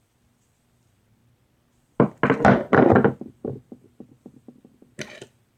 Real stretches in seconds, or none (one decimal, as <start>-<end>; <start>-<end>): 0.0-5.6